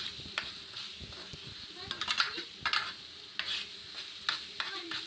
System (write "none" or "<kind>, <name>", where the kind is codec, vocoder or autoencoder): none